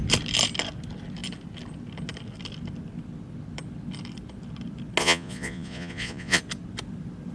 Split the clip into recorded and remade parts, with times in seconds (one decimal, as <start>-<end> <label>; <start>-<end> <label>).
0.0-5.0 recorded; 5.0-6.4 remade; 6.4-7.3 recorded